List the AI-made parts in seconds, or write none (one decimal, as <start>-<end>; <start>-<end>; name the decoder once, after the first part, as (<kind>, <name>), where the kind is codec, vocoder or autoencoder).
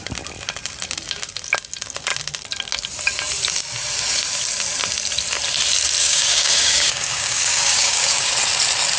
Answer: 6.0-8.3 (codec, DAC)